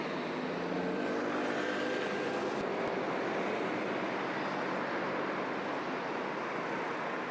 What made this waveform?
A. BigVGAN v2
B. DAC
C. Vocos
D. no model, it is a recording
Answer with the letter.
D